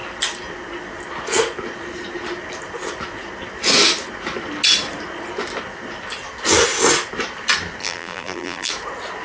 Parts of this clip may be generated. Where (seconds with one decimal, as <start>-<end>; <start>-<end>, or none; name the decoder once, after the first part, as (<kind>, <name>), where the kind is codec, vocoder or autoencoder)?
7.8-8.7 (vocoder, BigVGAN v2)